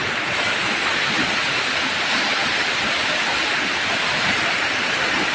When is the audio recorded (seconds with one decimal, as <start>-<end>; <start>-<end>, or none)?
0.0-5.3